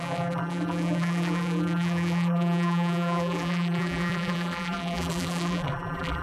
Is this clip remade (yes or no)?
yes